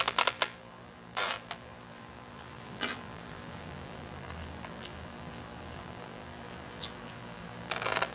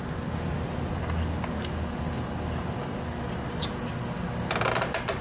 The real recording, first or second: second